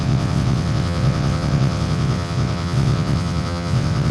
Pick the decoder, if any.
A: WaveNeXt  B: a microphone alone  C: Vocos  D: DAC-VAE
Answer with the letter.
A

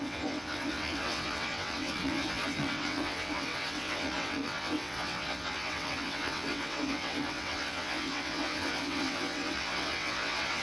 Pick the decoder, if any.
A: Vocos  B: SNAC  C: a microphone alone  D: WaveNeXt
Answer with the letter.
D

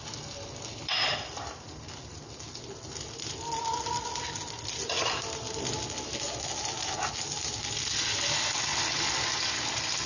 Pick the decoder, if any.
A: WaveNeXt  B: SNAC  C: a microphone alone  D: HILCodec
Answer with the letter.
C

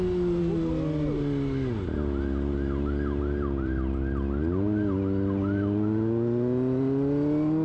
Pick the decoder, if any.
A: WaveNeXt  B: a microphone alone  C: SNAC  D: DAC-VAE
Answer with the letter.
B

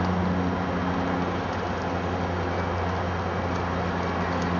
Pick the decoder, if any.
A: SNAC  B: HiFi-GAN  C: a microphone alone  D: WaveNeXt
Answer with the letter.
C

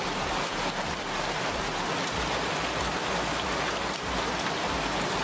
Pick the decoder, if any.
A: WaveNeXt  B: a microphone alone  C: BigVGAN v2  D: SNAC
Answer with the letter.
B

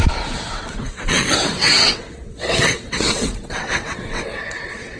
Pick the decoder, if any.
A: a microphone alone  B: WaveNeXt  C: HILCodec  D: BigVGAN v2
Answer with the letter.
B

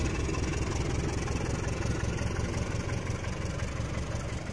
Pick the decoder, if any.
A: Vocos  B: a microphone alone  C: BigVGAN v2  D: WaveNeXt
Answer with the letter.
B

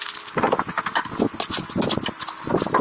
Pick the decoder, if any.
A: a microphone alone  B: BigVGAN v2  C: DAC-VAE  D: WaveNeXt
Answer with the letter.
A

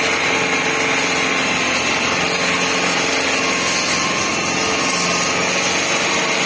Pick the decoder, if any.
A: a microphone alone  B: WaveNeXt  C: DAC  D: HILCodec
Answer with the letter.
A